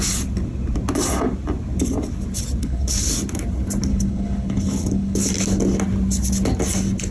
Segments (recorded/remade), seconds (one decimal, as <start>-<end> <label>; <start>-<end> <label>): 0.0-2.6 recorded; 2.6-3.1 remade; 3.1-3.9 recorded; 3.9-5.3 remade; 5.3-7.1 recorded